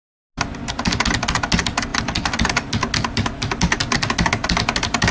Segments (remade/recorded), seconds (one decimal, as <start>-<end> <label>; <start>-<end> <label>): 0.0-5.1 recorded